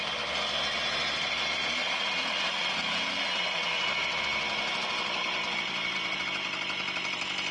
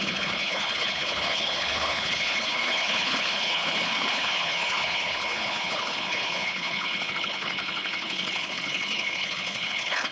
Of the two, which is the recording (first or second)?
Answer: first